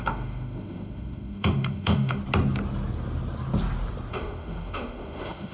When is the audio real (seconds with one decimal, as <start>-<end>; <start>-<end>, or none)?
2.2-4.1